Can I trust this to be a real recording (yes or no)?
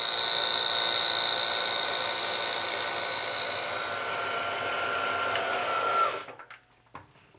yes